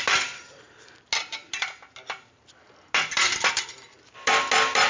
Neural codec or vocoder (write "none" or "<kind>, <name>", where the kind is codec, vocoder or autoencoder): none